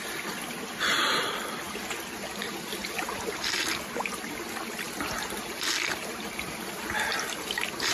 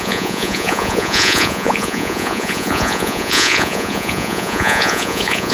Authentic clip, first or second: first